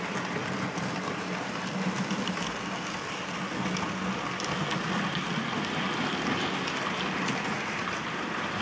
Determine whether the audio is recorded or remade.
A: recorded